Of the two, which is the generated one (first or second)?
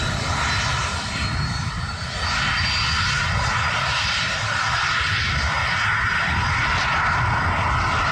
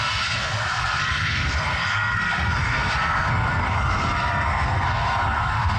second